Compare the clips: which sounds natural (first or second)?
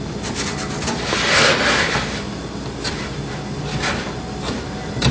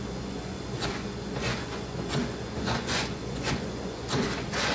first